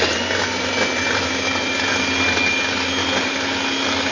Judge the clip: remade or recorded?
recorded